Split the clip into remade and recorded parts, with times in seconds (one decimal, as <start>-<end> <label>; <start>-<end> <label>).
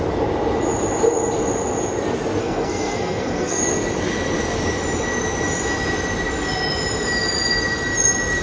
0.0-2.4 recorded; 2.4-3.6 remade; 3.6-8.4 recorded